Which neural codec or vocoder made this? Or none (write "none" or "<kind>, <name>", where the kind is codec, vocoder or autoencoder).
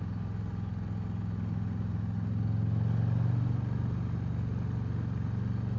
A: none